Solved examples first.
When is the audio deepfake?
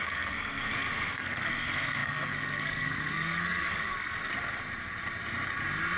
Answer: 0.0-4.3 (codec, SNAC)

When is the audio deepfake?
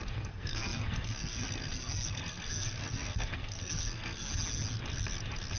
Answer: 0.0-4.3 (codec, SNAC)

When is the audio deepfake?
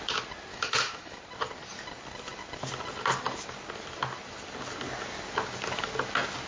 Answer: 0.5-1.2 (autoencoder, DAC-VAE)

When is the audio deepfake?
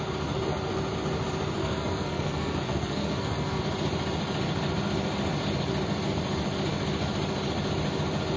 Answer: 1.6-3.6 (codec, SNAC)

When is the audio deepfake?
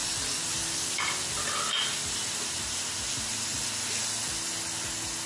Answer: 0.0-3.2 (vocoder, BigVGAN v2)